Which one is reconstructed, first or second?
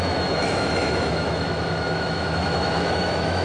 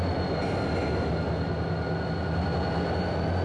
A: first